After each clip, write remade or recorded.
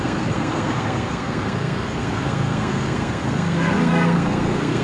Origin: remade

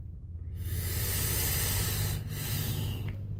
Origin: recorded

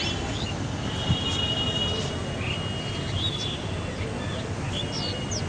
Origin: recorded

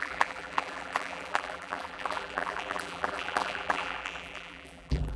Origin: remade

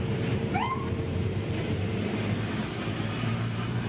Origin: remade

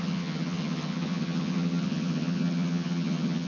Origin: remade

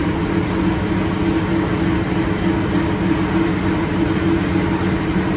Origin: recorded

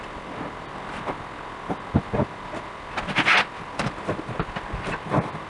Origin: recorded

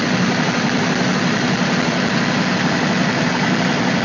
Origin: recorded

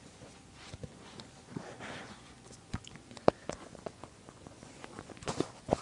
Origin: remade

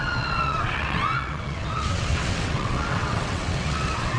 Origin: remade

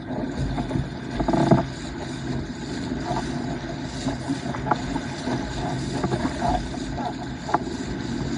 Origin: recorded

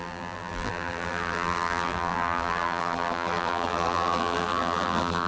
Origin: remade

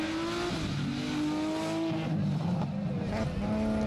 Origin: recorded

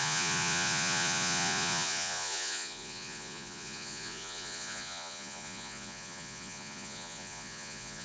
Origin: remade